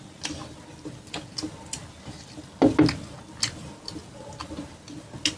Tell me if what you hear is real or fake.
real